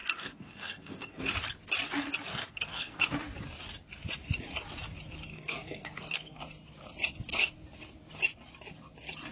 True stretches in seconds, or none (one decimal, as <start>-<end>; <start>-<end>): 1.2-2.3; 3.0-5.3; 6.4-9.3